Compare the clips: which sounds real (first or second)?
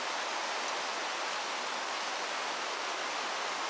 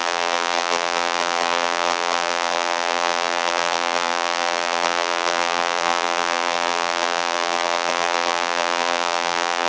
first